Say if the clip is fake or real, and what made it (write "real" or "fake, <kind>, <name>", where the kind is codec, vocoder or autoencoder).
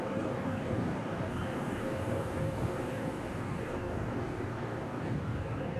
fake, codec, DAC